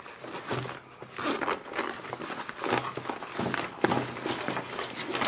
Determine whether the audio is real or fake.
real